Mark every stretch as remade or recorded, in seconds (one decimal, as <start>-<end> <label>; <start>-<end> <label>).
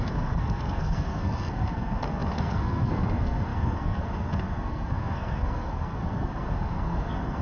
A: 0.0-7.4 remade